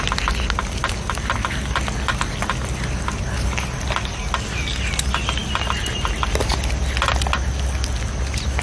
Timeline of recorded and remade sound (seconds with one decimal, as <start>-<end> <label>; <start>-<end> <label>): 0.0-8.6 recorded